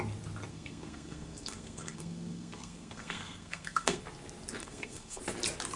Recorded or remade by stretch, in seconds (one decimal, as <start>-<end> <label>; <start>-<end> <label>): 0.0-0.5 recorded; 0.5-4.0 remade; 4.0-4.6 recorded; 4.6-5.2 remade; 5.2-5.8 recorded